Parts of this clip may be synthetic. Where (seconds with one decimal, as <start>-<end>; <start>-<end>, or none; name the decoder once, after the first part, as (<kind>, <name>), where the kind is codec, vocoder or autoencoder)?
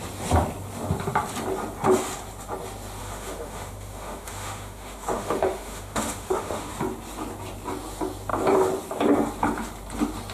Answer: 3.0-6.7 (autoencoder, DAC-VAE)